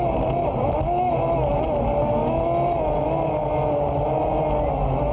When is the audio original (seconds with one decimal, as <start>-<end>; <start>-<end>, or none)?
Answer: 0.0-5.1